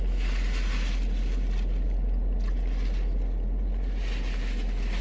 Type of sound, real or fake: real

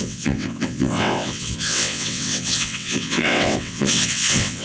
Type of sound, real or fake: fake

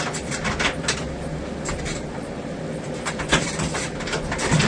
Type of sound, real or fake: real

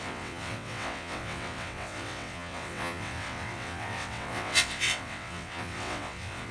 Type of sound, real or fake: fake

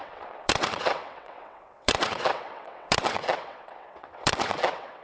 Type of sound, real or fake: fake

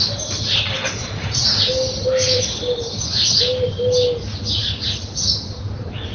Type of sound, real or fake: real